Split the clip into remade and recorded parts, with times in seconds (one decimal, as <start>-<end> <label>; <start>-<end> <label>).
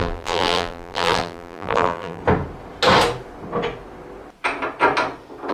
0.0-2.2 remade; 2.2-5.5 recorded